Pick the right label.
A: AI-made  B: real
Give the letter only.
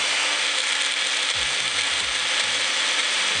B